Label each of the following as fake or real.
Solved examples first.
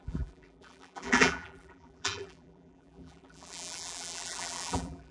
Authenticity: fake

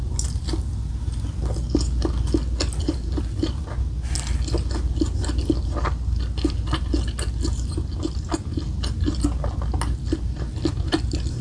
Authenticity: real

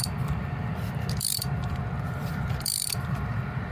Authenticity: fake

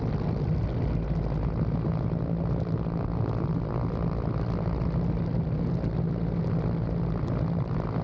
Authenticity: real